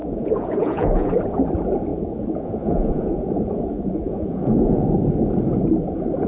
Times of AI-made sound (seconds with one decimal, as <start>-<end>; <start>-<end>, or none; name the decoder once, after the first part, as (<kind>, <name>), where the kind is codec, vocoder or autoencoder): 0.0-1.1 (vocoder, Vocos); 1.9-4.9